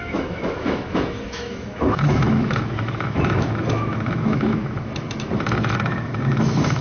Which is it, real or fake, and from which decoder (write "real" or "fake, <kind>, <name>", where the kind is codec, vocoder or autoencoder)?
fake, autoencoder, DAC-VAE